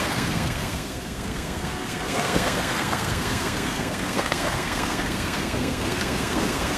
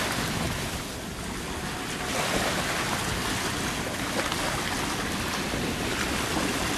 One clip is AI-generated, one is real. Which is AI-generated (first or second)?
first